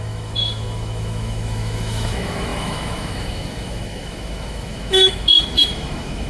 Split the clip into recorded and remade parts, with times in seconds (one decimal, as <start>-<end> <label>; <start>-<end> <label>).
0.0-6.3 remade